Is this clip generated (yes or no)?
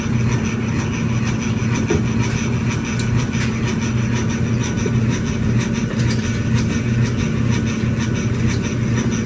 no